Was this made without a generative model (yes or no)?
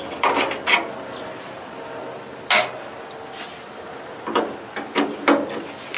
yes